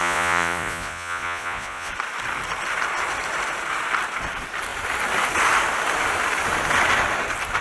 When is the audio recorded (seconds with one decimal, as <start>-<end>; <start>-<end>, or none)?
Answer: 1.9-7.6